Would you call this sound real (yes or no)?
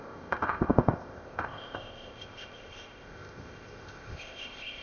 no